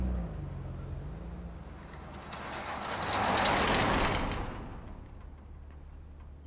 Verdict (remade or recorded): recorded